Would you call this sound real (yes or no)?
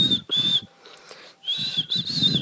no